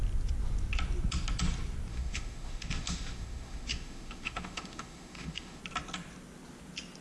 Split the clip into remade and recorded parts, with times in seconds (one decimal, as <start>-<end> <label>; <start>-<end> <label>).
0.0-1.9 recorded; 1.9-5.6 remade; 5.6-7.0 recorded